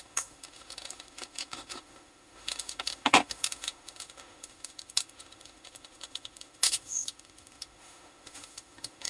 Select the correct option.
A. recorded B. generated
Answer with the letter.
B